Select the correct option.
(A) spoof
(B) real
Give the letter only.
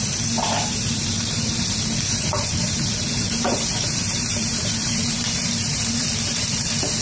A